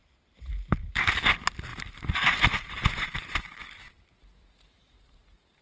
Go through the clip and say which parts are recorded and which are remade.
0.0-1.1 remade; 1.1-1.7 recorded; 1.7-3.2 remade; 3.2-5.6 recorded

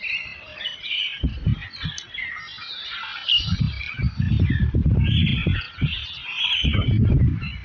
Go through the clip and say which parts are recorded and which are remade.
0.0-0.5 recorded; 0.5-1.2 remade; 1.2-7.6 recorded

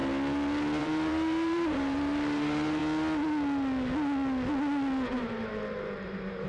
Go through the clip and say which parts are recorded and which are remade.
0.0-0.8 recorded; 0.8-2.8 remade; 2.8-5.1 recorded; 5.1-6.5 remade